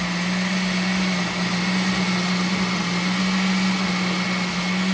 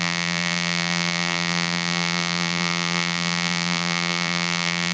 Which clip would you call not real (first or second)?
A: second